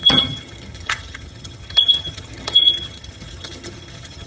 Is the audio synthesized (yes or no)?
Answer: yes